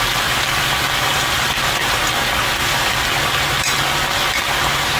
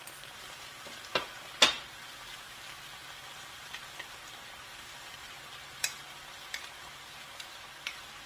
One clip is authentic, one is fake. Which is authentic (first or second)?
first